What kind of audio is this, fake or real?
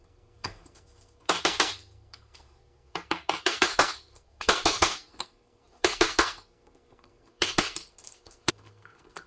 fake